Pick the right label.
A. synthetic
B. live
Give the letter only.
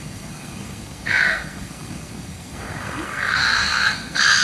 A